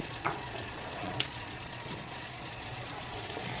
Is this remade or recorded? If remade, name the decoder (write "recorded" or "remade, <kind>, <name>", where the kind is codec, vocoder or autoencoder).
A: remade, vocoder, Vocos